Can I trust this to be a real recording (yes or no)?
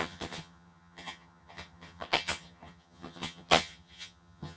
no